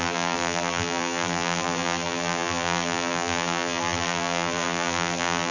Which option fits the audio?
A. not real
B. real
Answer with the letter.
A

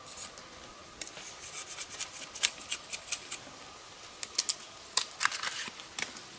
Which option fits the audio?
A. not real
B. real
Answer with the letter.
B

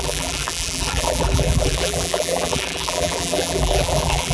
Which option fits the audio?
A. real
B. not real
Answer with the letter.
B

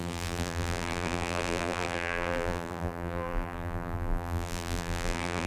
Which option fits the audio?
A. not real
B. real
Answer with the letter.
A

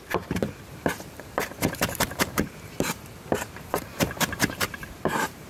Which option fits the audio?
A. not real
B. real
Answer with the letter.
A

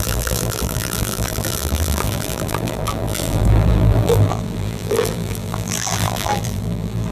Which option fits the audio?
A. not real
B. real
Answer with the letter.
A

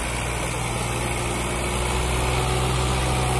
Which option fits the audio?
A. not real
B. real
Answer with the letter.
B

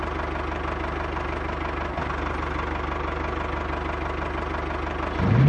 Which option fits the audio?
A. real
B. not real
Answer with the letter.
A